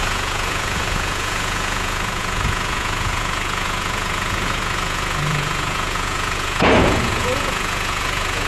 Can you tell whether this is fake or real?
fake